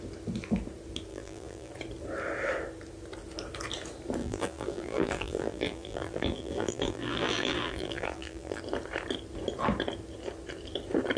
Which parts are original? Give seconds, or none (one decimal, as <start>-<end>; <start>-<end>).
0.0-1.1; 1.7-4.2; 8.6-11.2